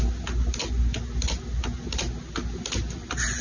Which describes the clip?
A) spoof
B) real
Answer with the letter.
B